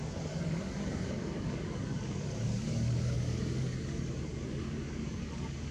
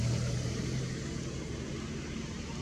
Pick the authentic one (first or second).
second